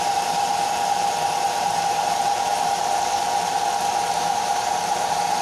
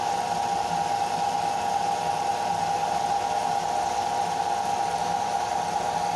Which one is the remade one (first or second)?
first